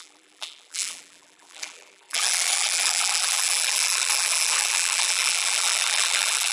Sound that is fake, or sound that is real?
fake